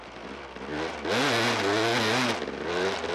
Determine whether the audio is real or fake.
real